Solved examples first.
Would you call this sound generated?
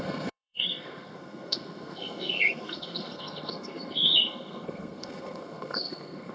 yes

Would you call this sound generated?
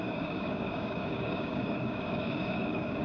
yes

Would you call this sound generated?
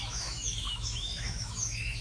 yes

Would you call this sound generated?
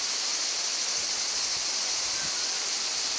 no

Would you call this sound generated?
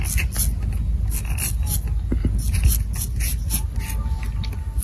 no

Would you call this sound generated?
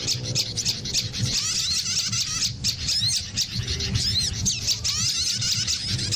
no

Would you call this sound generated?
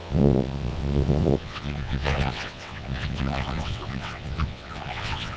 yes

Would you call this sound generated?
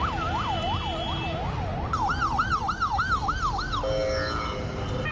no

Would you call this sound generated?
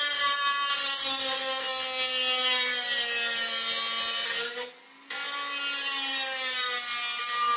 no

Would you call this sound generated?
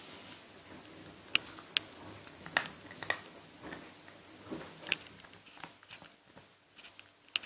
no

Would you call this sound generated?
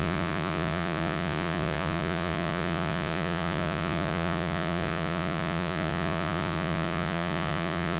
yes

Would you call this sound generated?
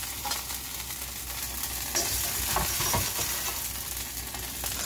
no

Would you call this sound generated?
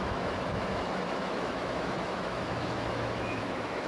yes